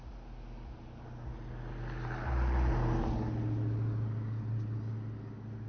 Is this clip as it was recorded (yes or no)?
yes